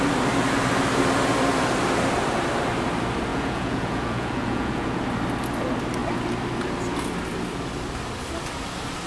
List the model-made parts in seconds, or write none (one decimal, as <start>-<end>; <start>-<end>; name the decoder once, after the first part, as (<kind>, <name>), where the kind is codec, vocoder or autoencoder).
3.3-5.0 (vocoder, Vocos)